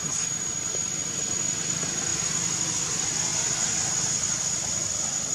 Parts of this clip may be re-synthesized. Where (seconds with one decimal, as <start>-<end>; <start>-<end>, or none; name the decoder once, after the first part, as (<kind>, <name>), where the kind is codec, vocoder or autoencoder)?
none